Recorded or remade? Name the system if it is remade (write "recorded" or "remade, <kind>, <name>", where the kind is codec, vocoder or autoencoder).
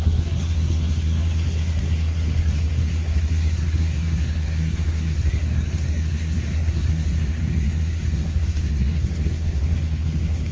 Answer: remade, codec, SNAC